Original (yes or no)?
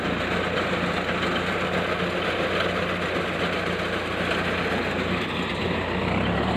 yes